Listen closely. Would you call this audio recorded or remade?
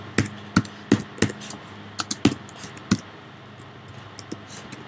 recorded